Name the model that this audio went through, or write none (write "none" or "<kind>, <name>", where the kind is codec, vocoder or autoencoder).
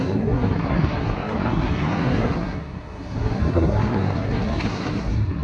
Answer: codec, SNAC